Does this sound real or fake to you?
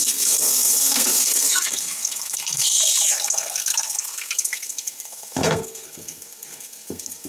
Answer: fake